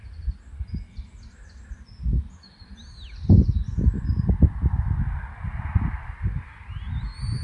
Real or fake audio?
real